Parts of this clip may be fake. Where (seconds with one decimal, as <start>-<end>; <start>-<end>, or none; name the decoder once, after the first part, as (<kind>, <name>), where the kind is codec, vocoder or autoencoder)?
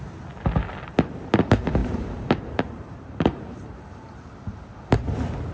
1.8-4.3 (vocoder, BigVGAN v2)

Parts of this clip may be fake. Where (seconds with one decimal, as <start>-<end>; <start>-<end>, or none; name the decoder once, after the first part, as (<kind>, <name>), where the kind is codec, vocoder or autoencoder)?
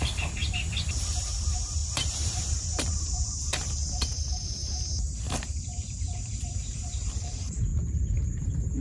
0.0-0.4 (vocoder, BigVGAN v2); 1.2-7.7; 8.3-8.8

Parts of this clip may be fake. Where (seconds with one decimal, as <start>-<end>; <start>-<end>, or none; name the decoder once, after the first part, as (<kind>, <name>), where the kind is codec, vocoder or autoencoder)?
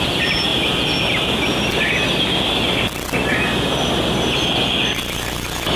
none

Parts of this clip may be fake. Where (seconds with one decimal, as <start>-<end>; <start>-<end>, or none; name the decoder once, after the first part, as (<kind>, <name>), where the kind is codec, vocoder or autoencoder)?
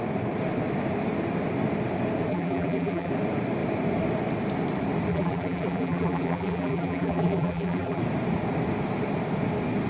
2.3-3.1 (vocoder, BigVGAN v2); 5.1-8.0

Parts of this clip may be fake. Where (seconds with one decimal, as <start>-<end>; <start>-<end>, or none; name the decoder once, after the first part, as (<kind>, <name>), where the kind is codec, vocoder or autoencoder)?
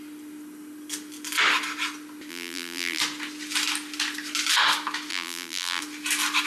2.3-3.0 (vocoder, BigVGAN v2); 5.1-5.8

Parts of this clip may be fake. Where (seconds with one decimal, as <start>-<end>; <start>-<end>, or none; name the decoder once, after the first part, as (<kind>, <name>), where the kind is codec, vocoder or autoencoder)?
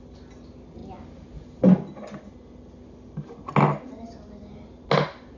none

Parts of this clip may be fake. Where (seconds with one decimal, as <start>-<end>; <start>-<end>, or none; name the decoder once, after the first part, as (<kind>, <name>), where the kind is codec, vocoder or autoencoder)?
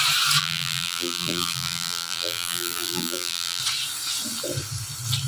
0.4-3.6 (vocoder, BigVGAN v2)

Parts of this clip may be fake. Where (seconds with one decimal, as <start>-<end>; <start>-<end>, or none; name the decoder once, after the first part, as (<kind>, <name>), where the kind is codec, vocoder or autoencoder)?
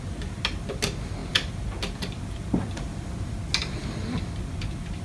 none